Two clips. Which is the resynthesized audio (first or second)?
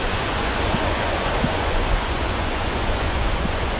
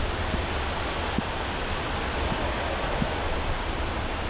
first